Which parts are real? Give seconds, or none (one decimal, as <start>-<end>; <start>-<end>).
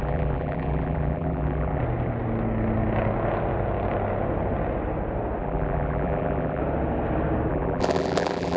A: 1.8-5.4; 6.6-7.5